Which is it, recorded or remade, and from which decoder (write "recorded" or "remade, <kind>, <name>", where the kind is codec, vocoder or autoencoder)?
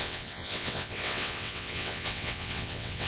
remade, vocoder, WaveNeXt